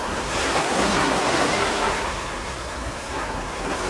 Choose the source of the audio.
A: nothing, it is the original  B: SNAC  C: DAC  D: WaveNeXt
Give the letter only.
B